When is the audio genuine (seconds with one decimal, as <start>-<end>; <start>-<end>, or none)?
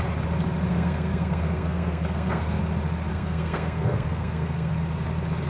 0.0-0.7; 2.6-3.1; 4.7-5.5